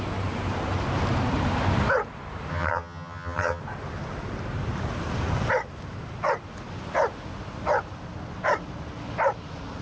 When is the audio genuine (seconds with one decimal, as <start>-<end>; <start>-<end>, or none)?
0.0-2.5; 3.6-9.8